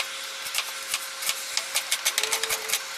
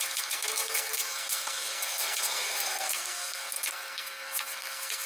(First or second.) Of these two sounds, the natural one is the first